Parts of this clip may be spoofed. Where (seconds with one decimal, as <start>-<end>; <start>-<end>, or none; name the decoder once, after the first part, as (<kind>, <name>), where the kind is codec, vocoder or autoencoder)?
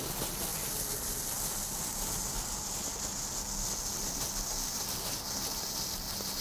none